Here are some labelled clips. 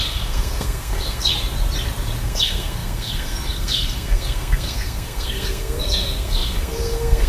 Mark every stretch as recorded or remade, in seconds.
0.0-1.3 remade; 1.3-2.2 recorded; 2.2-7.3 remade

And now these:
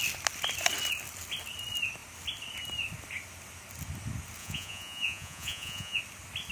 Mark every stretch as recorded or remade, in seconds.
0.0-4.4 recorded; 4.4-6.0 remade; 6.0-6.5 recorded

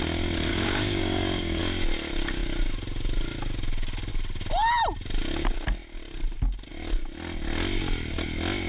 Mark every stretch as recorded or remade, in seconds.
0.0-0.5 recorded; 0.5-1.6 remade; 1.6-8.7 recorded

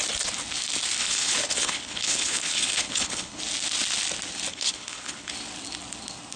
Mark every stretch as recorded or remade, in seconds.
0.0-1.0 recorded; 1.0-3.4 remade; 3.4-4.5 recorded; 4.5-5.3 remade; 5.3-6.4 recorded

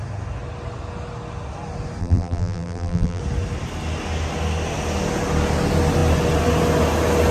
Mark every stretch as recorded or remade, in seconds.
0.0-2.0 recorded; 2.0-3.2 remade; 3.2-7.3 recorded

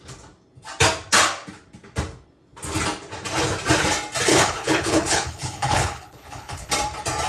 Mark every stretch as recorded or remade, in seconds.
0.0-4.3 recorded; 4.3-6.7 remade; 6.7-7.3 recorded

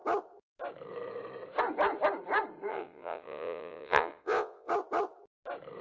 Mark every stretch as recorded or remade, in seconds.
0.0-2.7 recorded; 2.7-4.7 remade; 4.7-5.8 recorded